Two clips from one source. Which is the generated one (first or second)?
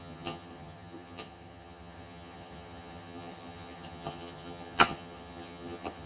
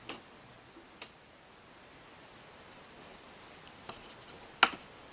first